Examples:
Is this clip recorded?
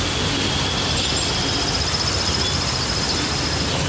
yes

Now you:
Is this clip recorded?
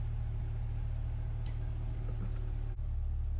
yes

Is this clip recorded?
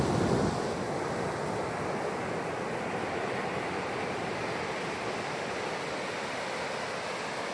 yes